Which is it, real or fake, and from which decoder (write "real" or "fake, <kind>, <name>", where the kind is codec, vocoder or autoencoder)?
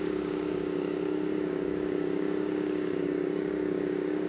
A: fake, codec, DAC